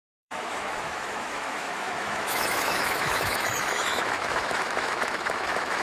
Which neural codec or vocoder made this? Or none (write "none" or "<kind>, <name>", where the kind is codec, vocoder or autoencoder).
autoencoder, DAC-VAE